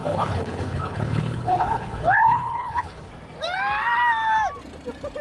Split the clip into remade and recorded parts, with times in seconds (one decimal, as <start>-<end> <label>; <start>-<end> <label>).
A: 0.0-3.1 remade; 3.1-5.2 recorded